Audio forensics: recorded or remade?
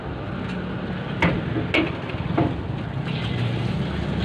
recorded